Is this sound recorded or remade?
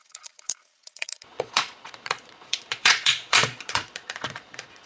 remade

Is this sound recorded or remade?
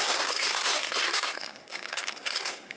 remade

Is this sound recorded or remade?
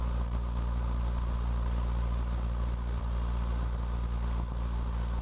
remade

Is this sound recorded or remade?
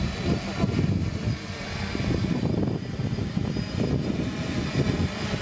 recorded